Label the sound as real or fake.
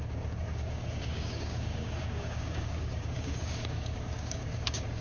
fake